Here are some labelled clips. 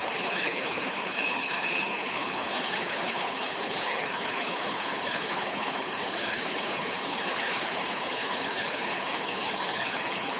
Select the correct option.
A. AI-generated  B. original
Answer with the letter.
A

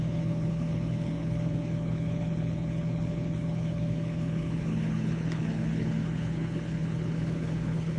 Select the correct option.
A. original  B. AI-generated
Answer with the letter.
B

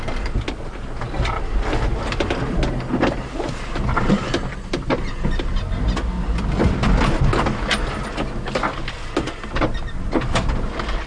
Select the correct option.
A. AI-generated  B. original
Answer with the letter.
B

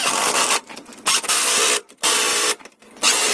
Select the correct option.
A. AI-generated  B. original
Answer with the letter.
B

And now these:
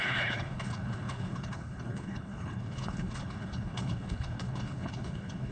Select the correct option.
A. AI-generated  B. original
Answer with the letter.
A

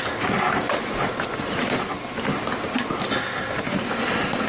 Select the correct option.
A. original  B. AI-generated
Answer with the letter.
A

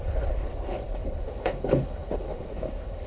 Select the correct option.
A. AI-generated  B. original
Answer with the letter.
A